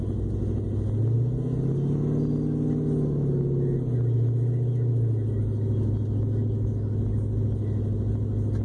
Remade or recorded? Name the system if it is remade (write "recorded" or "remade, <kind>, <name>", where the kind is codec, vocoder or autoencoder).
recorded